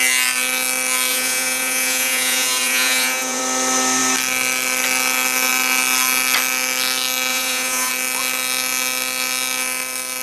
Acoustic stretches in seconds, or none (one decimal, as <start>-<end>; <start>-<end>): 0.0-1.1; 3.4-7.3; 7.9-10.2